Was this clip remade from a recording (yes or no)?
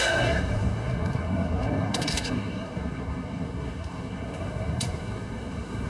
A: yes